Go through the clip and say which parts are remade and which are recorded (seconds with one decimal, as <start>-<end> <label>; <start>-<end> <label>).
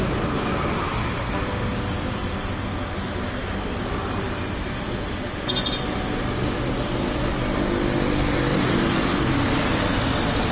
0.0-8.5 recorded; 8.5-9.7 remade; 9.7-10.5 recorded